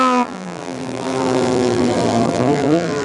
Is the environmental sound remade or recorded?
remade